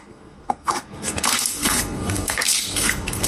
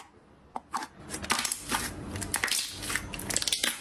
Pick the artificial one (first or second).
first